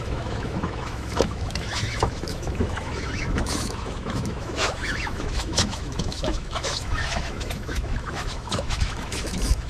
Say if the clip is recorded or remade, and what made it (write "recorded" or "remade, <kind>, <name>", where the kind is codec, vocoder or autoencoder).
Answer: remade, autoencoder, DAC-VAE